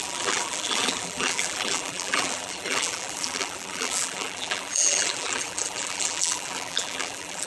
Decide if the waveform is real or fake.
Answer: fake